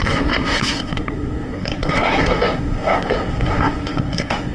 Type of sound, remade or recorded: remade